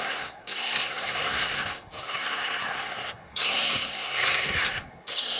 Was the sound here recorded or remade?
remade